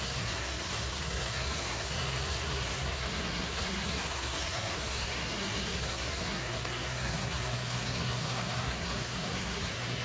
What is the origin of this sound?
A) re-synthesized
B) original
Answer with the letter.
A